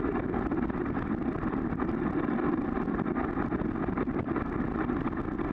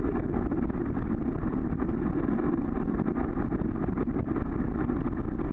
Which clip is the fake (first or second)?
first